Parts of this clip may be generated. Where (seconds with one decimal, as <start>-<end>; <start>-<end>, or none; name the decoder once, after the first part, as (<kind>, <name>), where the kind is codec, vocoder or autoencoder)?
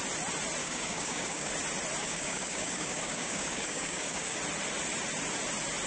0.6-1.5 (codec, DAC); 2.0-4.4